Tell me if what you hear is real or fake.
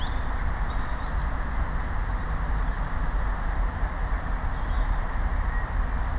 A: real